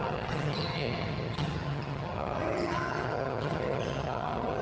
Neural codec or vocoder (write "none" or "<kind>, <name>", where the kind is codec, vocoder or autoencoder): vocoder, HiFi-GAN